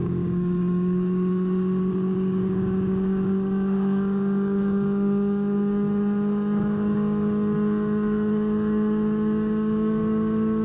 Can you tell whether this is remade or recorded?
remade